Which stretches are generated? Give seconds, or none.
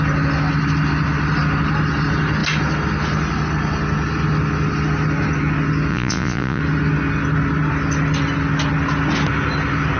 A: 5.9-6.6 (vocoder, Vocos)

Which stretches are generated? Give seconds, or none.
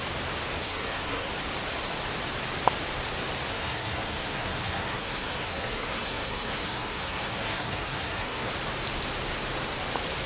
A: 0.6-1.3 (codec, SNAC); 3.5-8.5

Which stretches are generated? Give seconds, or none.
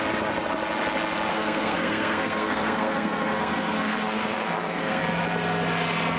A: 1.3-5.0 (codec, SNAC)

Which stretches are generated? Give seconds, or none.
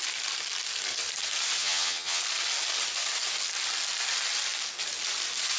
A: 1.6-2.2 (vocoder, HiFi-GAN)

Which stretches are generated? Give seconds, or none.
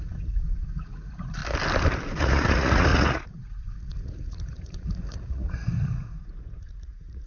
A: 0.0-1.4 (vocoder, Vocos); 2.2-7.3